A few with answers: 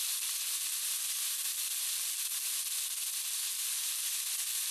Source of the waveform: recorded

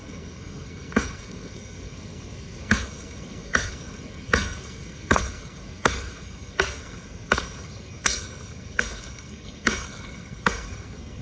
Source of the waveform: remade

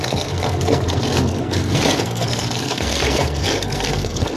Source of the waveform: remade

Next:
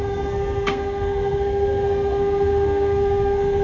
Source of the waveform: remade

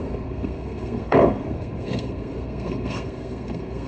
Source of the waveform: remade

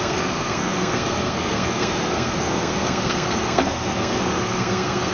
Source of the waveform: remade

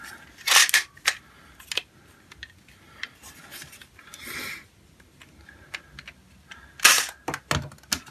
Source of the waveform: recorded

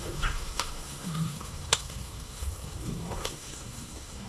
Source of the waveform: remade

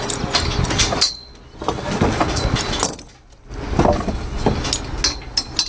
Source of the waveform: recorded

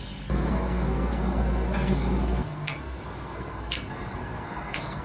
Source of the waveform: remade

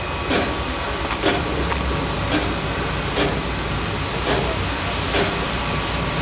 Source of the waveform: recorded